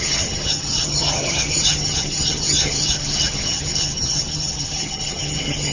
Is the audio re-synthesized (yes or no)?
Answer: yes